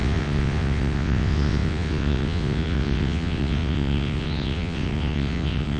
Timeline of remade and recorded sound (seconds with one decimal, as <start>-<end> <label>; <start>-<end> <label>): 0.0-5.8 remade